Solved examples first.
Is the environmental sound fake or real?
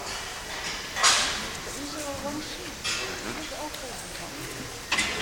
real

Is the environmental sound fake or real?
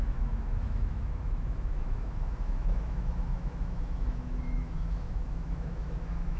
fake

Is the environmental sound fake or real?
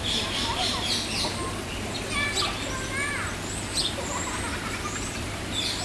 real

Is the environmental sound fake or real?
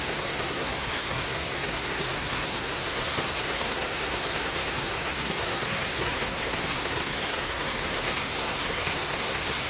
fake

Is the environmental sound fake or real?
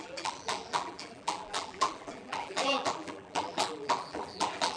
fake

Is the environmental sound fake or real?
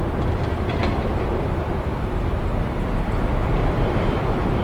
fake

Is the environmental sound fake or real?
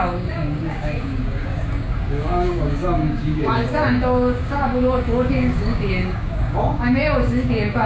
fake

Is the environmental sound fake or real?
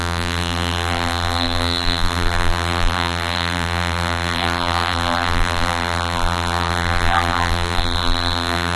fake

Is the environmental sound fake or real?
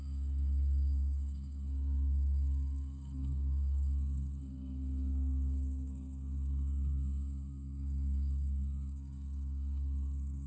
fake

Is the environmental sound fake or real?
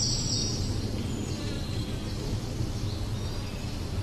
real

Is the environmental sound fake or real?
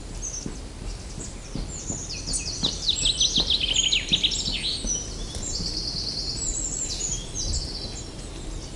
real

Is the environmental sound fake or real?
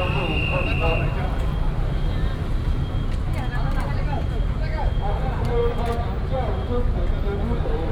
real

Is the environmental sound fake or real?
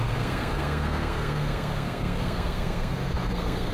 fake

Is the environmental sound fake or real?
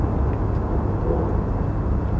real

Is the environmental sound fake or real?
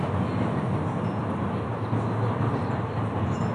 real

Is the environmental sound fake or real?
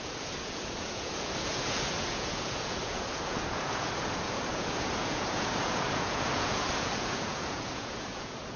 fake